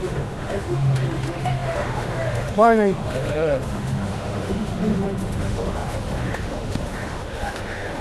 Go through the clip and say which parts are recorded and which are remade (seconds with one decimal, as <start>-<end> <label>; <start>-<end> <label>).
0.0-8.0 remade